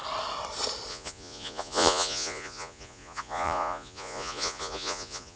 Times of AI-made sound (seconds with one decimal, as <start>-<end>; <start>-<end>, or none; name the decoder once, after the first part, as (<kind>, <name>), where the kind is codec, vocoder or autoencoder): 0.9-5.4 (vocoder, Vocos)